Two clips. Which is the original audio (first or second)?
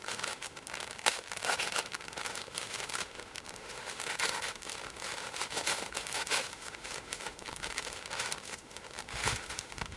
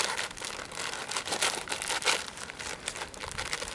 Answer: second